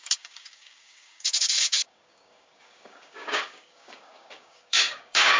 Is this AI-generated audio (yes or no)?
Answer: yes